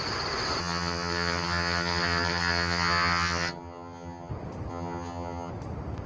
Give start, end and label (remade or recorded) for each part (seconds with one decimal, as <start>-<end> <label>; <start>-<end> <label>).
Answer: 0.0-0.6 recorded; 0.6-4.3 remade; 4.3-4.7 recorded; 4.7-5.5 remade; 5.5-6.1 recorded